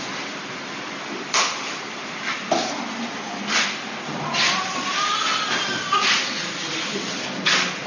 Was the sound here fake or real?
real